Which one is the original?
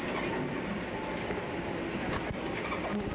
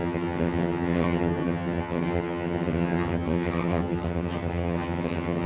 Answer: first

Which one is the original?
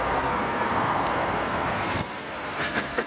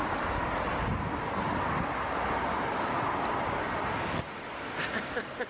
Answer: second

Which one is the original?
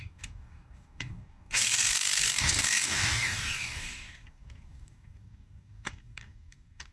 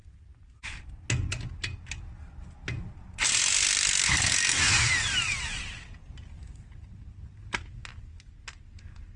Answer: second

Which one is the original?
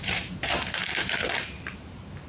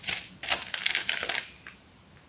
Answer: second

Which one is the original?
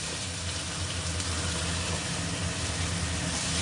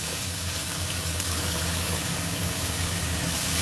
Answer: first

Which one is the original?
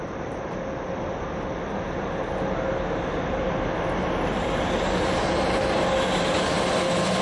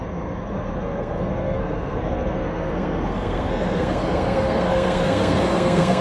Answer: first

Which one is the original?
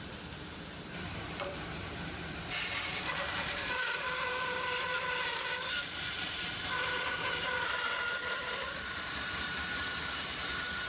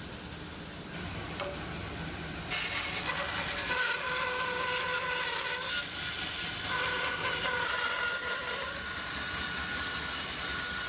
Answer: second